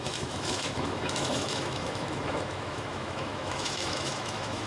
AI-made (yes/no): yes